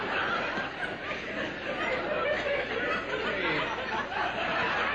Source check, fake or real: real